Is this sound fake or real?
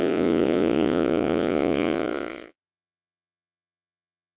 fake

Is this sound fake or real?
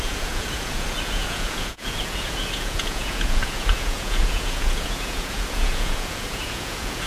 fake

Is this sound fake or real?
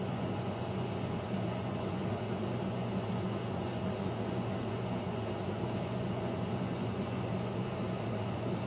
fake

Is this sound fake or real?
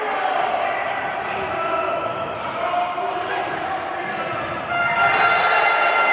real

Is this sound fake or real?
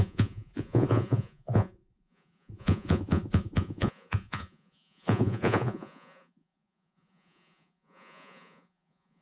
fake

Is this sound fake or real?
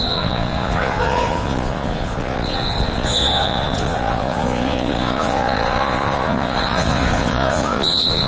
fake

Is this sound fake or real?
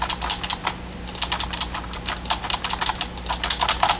real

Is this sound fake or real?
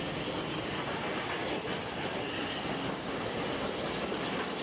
real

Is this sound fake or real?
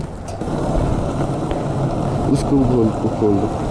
real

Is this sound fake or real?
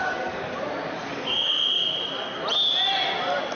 real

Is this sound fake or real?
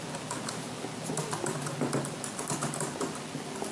real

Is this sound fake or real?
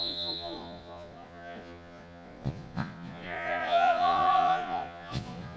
fake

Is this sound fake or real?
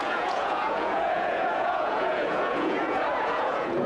fake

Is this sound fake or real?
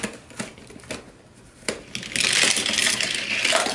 real